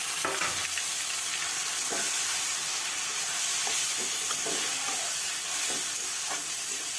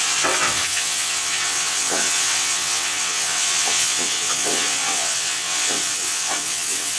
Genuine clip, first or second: first